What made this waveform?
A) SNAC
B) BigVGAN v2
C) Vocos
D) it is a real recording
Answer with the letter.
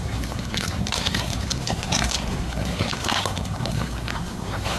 A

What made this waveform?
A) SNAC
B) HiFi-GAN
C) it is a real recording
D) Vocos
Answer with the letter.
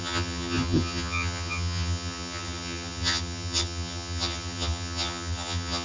B